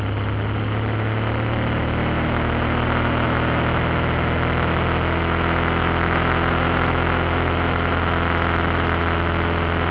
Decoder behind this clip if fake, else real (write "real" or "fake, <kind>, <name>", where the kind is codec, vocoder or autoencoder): real